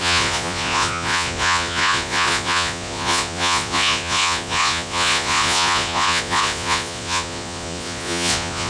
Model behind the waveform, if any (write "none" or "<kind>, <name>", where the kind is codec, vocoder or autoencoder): vocoder, Vocos